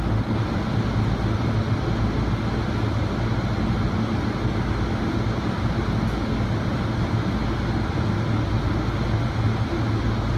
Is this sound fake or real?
real